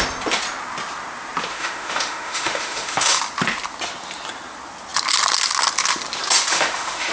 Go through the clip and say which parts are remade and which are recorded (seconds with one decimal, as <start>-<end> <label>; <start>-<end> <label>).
0.0-1.5 recorded; 1.5-3.2 remade; 3.2-6.5 recorded; 6.5-7.1 remade